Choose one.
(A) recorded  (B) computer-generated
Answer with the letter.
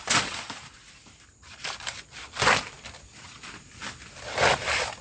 A